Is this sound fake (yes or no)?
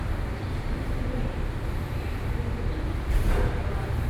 yes